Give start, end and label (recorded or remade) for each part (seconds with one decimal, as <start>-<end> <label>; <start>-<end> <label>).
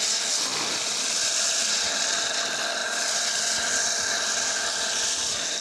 0.0-2.8 recorded; 2.8-3.4 remade; 3.4-5.6 recorded